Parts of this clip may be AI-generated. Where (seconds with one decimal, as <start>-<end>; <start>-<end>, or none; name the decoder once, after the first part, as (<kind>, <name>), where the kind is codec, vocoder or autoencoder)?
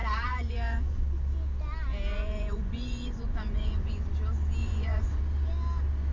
0.0-1.0 (vocoder, Vocos); 2.1-4.1; 4.6-5.2